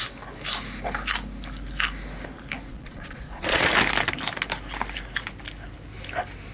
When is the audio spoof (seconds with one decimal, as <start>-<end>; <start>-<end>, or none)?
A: 2.7-3.7